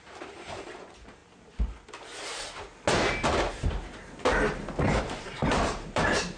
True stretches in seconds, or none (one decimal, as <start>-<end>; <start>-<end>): 1.2-5.0